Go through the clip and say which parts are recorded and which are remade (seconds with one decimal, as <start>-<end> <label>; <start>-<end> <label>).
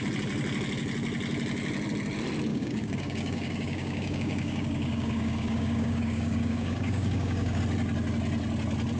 0.0-2.5 recorded; 2.5-7.6 remade; 7.6-9.0 recorded